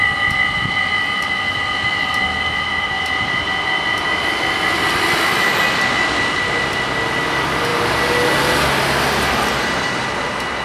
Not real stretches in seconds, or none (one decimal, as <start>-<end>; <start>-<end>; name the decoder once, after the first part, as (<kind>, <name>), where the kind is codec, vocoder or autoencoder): none